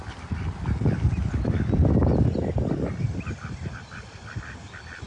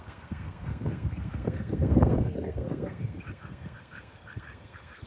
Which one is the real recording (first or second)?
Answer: first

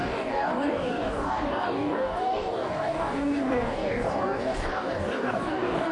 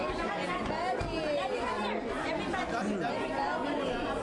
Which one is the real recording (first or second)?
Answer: second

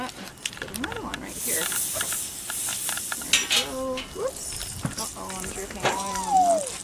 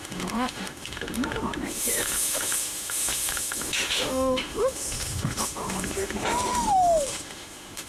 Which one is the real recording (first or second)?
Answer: first